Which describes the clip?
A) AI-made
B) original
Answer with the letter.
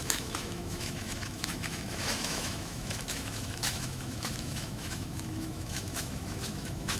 A